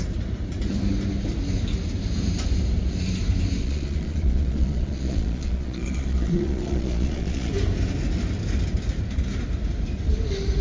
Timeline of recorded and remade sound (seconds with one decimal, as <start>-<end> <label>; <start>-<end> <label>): 0.0-3.6 recorded; 3.6-7.5 remade; 7.5-10.6 recorded

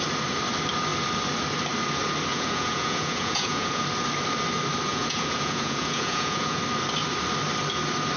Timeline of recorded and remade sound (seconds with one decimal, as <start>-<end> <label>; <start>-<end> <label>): 0.0-2.3 recorded; 2.3-3.8 remade; 3.8-4.9 recorded; 4.9-6.6 remade; 6.6-8.2 recorded

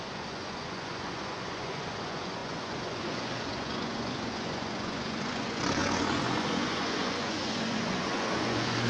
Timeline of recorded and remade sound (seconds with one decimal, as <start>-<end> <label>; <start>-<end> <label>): 0.0-8.9 remade

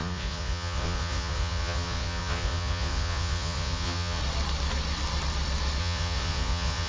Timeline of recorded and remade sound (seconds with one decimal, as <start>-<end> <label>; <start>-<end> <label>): 0.0-4.2 remade; 4.2-5.8 recorded; 5.8-6.9 remade

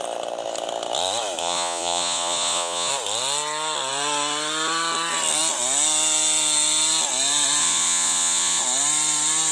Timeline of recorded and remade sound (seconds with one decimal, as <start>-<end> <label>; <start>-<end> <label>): 0.0-1.4 recorded; 1.4-2.9 remade; 2.9-7.6 recorded; 7.6-8.6 remade; 8.6-9.5 recorded

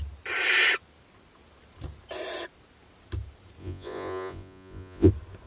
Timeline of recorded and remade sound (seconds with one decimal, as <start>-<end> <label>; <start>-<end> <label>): 0.0-3.6 recorded; 3.6-5.1 remade; 5.1-5.5 recorded

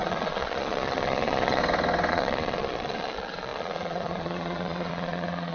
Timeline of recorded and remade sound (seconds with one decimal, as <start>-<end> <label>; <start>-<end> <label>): 0.0-1.6 remade; 1.6-2.1 recorded; 2.1-5.5 remade